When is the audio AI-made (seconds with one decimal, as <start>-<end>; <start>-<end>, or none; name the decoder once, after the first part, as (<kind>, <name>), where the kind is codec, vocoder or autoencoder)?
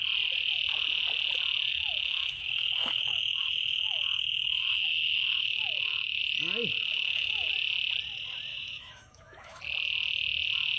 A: 1.7-6.2 (autoencoder, DAC-VAE); 6.7-7.5; 8.5-9.6